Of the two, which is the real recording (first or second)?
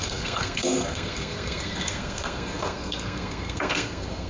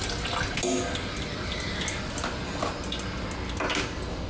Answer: second